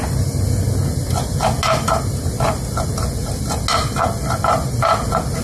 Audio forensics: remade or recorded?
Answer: recorded